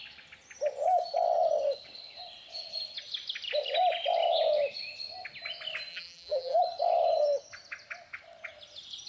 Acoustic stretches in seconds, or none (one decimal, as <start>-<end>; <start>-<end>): 0.0-5.9; 6.6-9.1